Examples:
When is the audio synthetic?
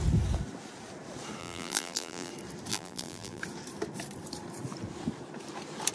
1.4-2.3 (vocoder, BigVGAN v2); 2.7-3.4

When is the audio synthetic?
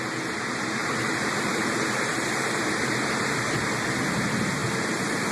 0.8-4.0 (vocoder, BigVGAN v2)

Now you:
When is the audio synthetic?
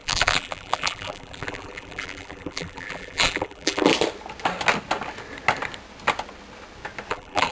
0.0-3.9 (vocoder, BigVGAN v2); 7.1-7.5